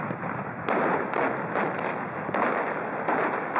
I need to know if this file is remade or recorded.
recorded